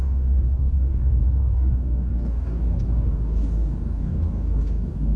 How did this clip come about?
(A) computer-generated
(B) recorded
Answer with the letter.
A